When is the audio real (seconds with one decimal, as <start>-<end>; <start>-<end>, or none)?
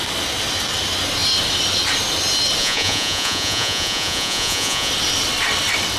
0.0-2.6; 4.9-6.0